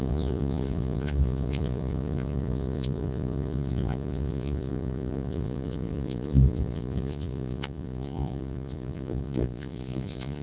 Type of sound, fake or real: fake